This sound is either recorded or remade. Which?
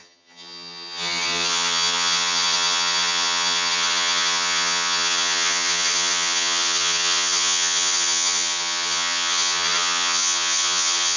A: remade